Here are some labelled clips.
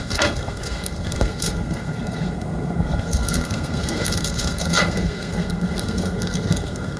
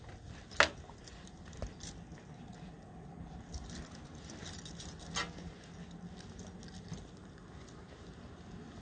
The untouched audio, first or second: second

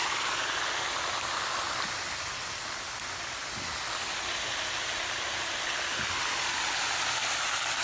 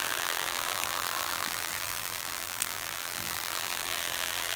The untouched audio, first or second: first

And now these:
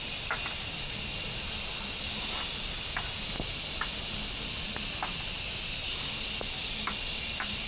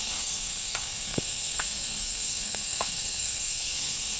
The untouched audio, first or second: first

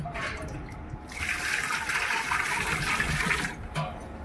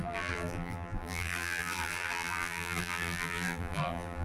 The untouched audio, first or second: first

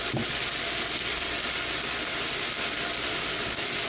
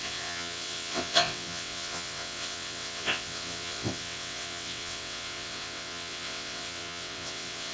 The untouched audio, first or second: first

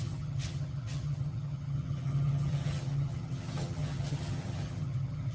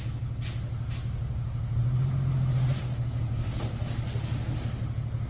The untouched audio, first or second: second